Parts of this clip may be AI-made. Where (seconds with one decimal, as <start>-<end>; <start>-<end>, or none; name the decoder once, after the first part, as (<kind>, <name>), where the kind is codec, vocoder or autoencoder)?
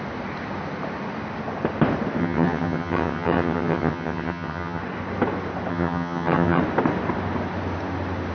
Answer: 2.2-4.8 (vocoder, HiFi-GAN); 5.7-6.6